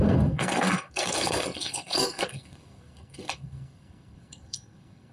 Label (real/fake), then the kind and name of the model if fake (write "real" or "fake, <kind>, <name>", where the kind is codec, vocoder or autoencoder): fake, codec, SNAC